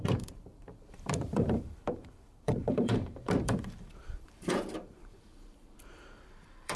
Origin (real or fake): fake